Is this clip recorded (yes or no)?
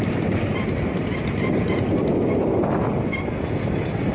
yes